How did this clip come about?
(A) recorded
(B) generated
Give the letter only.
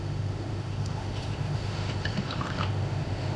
B